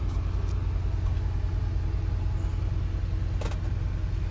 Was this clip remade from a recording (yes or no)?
no